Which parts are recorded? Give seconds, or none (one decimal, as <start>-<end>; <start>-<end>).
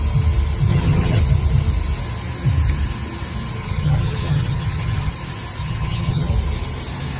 0.0-0.7; 1.2-3.6; 5.1-5.6; 6.3-7.2